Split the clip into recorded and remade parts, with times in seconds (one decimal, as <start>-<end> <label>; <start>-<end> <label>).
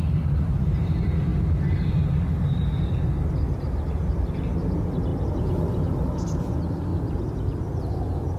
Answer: 0.0-8.4 recorded